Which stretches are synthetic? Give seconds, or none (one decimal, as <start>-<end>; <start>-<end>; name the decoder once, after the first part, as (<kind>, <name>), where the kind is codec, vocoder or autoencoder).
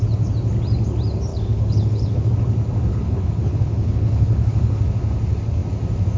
1.3-2.3 (codec, HILCodec); 2.9-4.8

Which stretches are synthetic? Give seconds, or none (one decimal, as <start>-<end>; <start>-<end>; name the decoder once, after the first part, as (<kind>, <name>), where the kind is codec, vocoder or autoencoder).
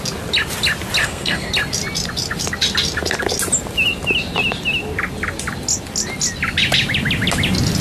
1.0-1.5 (codec, SNAC)